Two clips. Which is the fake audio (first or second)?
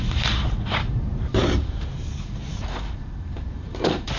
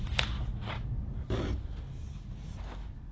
first